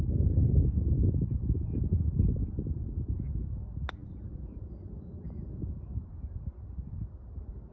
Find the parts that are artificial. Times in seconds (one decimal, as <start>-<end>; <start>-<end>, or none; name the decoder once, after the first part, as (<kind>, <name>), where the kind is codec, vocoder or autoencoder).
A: 0.4-2.2 (vocoder, BigVGAN v2); 4.0-7.7